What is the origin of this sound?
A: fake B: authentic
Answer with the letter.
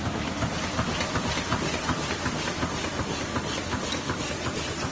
B